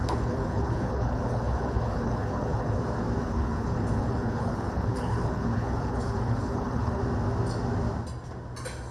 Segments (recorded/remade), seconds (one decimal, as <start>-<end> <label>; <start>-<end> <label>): 0.0-2.8 remade; 2.8-3.2 recorded; 3.2-7.0 remade; 7.0-8.9 recorded